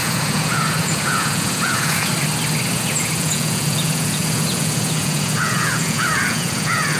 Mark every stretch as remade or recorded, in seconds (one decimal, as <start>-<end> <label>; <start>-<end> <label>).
0.0-2.1 remade; 2.1-2.7 recorded; 2.7-7.0 remade